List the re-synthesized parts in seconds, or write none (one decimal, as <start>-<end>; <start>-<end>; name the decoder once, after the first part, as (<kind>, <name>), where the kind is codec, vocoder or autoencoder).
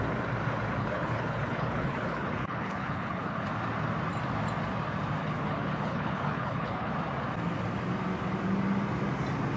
0.8-3.5 (codec, HILCodec); 5.2-6.9